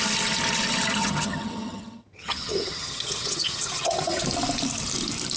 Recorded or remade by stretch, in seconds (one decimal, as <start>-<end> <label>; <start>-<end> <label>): 0.0-1.0 recorded; 1.0-4.2 remade; 4.2-5.4 recorded